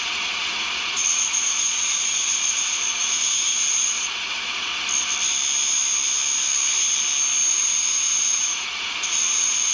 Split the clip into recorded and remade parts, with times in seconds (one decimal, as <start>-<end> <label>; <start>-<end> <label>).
0.0-4.7 remade; 4.7-7.5 recorded; 7.5-9.7 remade